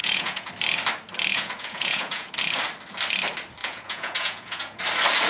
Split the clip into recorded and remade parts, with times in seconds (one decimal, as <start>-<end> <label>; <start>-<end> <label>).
0.0-0.5 remade; 0.5-1.3 recorded; 1.3-2.3 remade; 2.3-3.6 recorded; 3.6-4.8 remade; 4.8-5.3 recorded